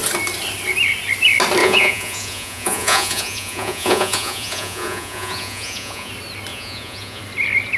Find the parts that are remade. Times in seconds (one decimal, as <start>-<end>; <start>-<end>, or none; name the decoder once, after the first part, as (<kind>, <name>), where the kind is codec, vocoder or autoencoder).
1.6-6.1 (vocoder, Vocos); 6.5-7.2